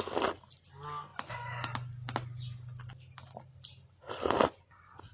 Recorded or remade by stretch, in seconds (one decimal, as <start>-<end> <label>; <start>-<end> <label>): 0.0-5.1 recorded